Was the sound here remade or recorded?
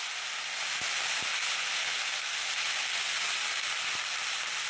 recorded